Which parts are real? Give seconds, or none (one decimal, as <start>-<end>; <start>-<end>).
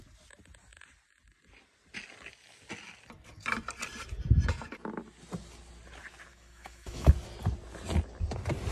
0.0-6.3; 7.1-8.7